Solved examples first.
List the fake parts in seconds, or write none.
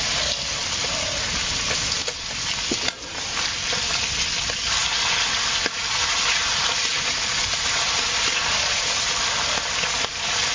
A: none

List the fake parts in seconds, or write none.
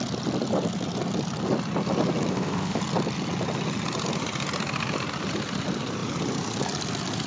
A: 2.3-2.8 (codec, ZipCodec)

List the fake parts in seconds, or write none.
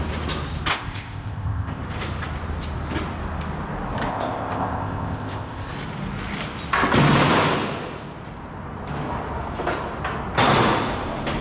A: 0.7-1.8 (codec, ZipCodec); 4.1-5.7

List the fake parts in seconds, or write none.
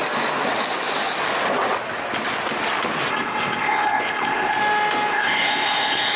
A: 3.1-4.6 (codec, ZipCodec); 5.1-6.2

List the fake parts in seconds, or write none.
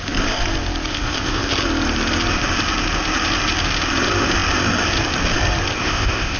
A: 0.9-1.5 (codec, ZipCodec); 5.7-6.4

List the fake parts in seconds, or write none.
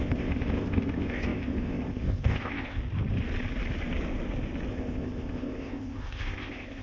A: 0.0-2.8 (codec, ZipCodec); 4.7-6.8